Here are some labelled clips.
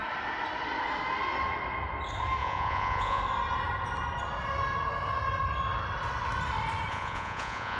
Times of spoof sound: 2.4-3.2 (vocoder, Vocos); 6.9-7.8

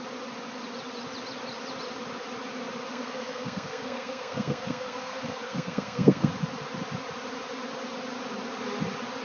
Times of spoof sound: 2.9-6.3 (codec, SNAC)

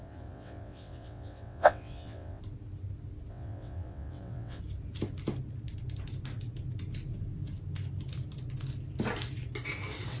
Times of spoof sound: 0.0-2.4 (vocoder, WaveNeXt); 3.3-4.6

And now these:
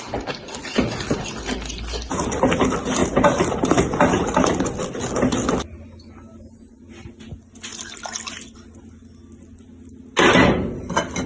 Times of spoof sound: none

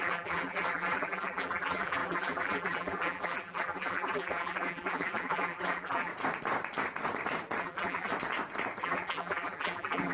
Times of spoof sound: 0.0-6.1 (vocoder, BigVGAN v2); 7.6-8.1; 8.8-10.1